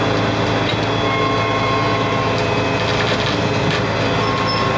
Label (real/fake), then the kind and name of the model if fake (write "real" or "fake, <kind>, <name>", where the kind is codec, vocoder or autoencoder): real